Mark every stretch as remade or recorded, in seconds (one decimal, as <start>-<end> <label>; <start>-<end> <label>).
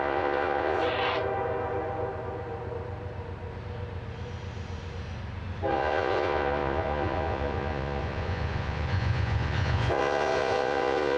0.0-0.8 remade; 0.8-5.7 recorded; 5.7-11.2 remade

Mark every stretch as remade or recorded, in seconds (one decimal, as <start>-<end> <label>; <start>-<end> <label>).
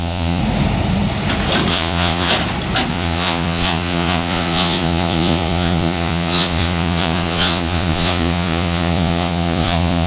0.0-0.4 remade; 0.4-1.7 recorded; 1.7-2.3 remade; 2.3-2.9 recorded; 2.9-10.1 remade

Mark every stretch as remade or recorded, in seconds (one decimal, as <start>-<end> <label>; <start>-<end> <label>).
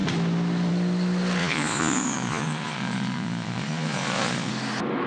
0.0-1.4 recorded; 1.4-4.5 remade; 4.5-5.1 recorded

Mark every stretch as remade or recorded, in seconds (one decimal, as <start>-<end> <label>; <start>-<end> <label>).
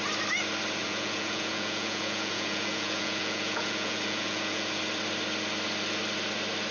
0.0-0.8 recorded; 0.8-4.8 remade; 4.8-6.7 recorded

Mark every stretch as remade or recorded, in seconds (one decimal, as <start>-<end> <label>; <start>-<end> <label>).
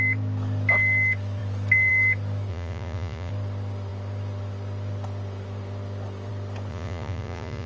0.0-2.5 recorded; 2.5-3.3 remade; 3.3-6.7 recorded; 6.7-7.7 remade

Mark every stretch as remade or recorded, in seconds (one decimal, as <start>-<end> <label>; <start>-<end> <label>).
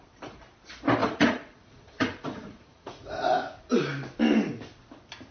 0.0-1.0 recorded; 1.0-3.4 remade; 3.4-5.3 recorded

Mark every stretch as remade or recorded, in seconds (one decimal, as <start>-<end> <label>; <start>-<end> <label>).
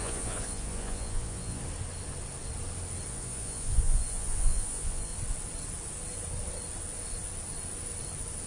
0.0-1.6 remade; 1.6-3.1 recorded; 3.1-5.1 remade; 5.1-8.5 recorded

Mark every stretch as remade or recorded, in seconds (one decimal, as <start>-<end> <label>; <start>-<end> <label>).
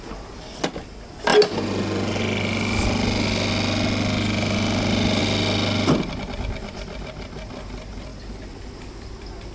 0.0-9.5 recorded